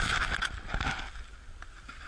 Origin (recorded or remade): recorded